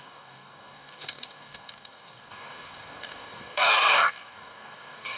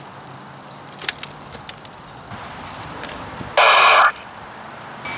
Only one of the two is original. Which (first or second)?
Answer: second